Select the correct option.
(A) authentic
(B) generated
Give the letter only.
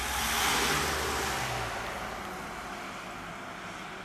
A